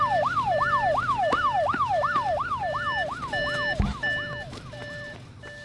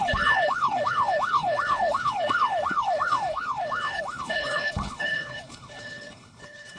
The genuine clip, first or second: first